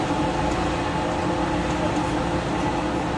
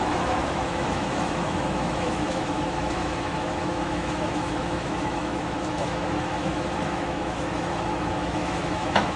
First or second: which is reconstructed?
second